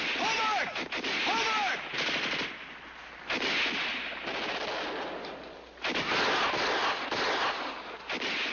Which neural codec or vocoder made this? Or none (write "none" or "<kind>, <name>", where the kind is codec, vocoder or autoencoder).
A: none